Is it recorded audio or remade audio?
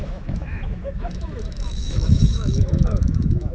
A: remade